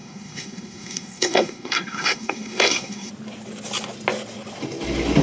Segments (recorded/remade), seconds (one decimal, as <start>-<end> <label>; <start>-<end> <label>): 0.0-3.1 remade; 3.1-5.2 recorded